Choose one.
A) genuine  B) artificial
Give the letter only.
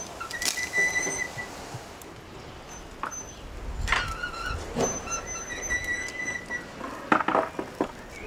A